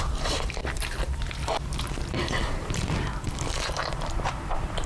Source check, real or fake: fake